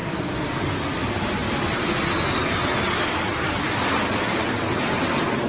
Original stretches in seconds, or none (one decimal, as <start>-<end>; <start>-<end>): 0.0-3.3; 4.4-5.5